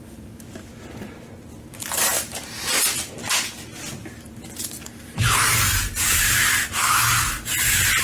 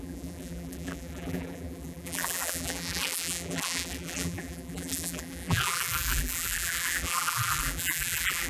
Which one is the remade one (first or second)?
second